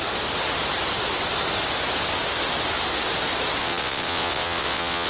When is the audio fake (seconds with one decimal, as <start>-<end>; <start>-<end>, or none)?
3.6-5.1